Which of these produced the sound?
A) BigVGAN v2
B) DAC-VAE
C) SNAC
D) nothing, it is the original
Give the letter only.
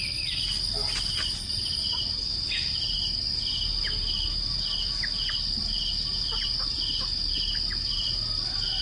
D